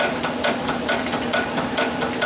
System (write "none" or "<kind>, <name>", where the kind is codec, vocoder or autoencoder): none